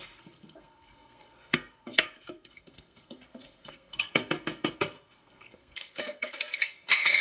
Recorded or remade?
remade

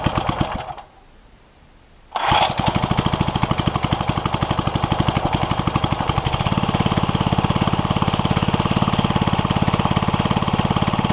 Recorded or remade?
recorded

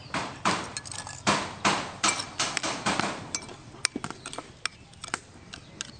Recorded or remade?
recorded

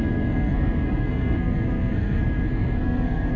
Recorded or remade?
remade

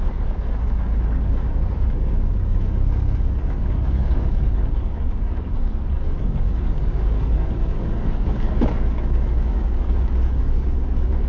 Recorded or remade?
remade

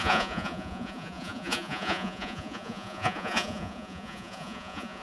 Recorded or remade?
remade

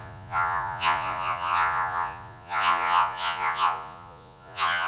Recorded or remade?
remade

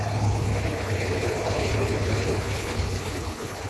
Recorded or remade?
remade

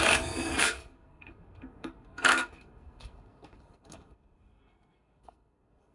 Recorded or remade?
remade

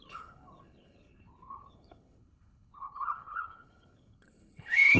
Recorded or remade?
remade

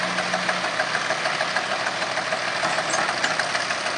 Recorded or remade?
recorded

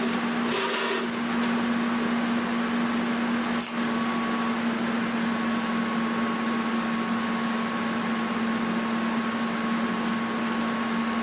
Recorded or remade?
recorded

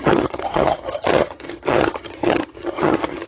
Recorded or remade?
remade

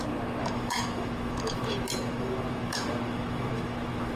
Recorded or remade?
remade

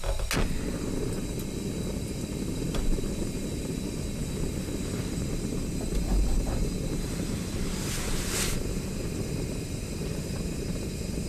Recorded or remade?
recorded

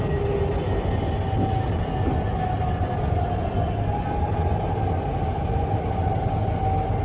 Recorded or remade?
recorded